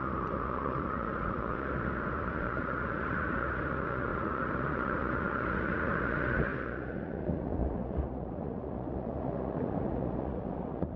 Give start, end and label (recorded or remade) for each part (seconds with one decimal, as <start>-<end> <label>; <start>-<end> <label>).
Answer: 0.0-11.0 remade